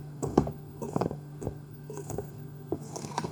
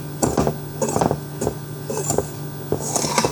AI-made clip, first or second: first